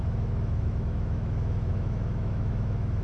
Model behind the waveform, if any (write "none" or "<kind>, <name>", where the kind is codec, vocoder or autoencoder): autoencoder, DAC-VAE